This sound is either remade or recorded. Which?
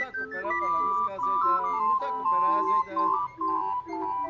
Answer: recorded